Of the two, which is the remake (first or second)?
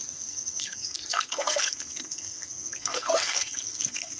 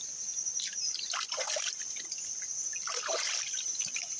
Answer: first